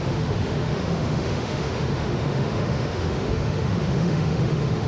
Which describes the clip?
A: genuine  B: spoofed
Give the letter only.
B